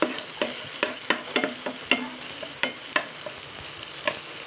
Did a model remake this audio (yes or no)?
no